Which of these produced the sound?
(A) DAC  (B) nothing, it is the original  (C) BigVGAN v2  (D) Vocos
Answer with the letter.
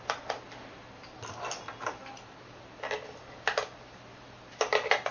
B